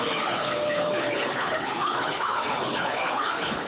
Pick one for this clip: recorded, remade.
remade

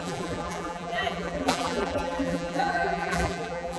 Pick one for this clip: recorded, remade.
remade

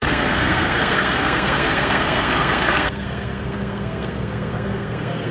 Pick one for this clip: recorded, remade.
remade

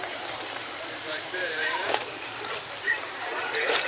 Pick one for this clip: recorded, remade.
remade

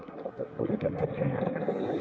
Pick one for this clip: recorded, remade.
remade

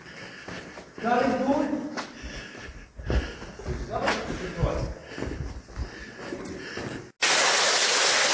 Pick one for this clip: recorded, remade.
recorded